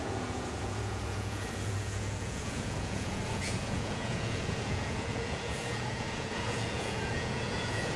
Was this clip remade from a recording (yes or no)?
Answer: yes